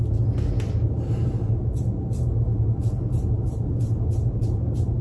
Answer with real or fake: real